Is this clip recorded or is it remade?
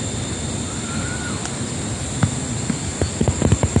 recorded